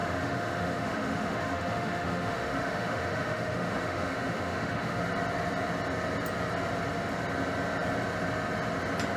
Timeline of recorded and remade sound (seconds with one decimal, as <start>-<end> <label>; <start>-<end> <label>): 0.0-5.0 remade; 5.0-9.2 recorded